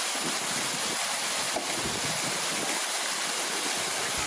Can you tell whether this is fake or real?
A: real